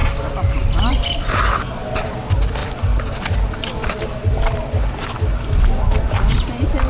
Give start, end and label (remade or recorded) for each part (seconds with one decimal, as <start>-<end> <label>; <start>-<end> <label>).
0.0-6.9 recorded